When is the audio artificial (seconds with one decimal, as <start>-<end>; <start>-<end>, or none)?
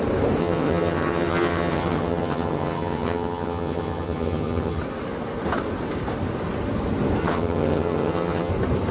0.4-4.8; 7.2-8.5